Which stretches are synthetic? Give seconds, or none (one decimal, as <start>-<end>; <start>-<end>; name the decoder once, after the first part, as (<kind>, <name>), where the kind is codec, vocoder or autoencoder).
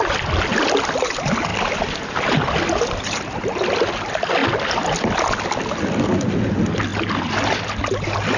none